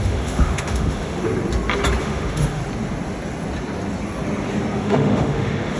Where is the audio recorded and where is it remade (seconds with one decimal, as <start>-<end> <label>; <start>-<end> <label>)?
0.0-1.2 remade; 1.2-2.0 recorded; 2.0-2.6 remade; 2.6-4.8 recorded; 4.8-5.8 remade